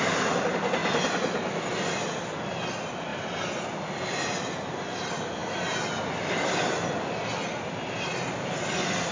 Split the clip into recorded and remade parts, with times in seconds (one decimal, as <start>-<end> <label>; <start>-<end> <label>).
0.0-9.1 recorded

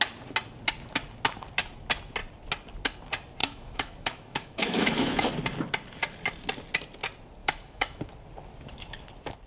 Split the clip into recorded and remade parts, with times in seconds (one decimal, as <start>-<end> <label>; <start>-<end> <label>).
0.0-3.4 recorded; 3.4-5.3 remade; 5.3-7.4 recorded; 7.4-8.0 remade; 8.0-9.5 recorded